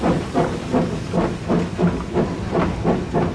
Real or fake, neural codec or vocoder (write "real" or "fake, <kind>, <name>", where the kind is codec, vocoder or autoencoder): real